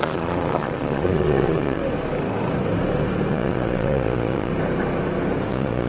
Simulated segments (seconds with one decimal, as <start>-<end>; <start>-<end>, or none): 0.0-1.8; 3.3-4.5; 5.5-5.9